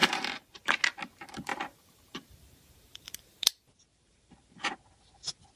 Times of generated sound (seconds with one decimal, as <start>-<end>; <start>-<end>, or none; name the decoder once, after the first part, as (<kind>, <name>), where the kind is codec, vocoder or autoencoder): 0.0-0.8 (vocoder, BigVGAN v2); 1.5-3.5; 3.9-4.7